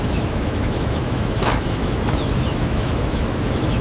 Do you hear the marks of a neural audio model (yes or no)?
yes